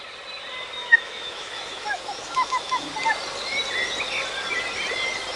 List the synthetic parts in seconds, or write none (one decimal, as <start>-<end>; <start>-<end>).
0.8-2.9